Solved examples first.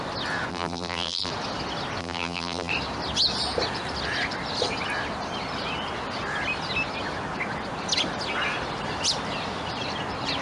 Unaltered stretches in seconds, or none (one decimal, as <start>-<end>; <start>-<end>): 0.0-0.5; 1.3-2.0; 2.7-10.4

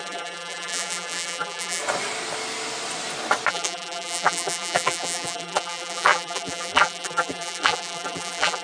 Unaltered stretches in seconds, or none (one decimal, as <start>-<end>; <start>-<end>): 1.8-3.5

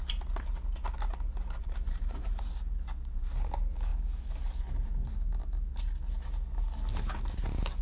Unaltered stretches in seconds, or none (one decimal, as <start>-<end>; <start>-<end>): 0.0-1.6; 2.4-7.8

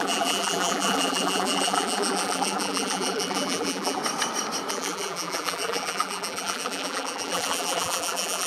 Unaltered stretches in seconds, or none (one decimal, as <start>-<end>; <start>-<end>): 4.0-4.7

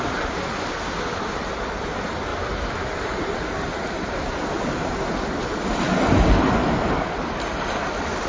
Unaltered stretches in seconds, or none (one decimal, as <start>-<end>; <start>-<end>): 0.0-2.3; 4.9-6.6; 7.3-8.3

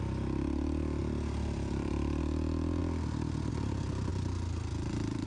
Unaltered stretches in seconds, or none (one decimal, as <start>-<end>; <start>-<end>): 0.0-1.0; 2.2-4.1

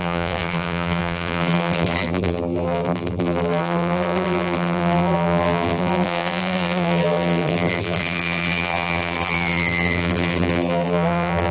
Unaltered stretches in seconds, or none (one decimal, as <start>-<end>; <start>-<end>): none

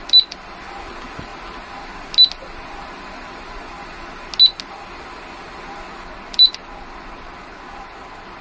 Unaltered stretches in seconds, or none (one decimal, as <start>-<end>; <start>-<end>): 0.0-8.4